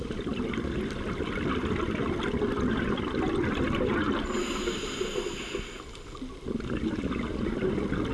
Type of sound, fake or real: real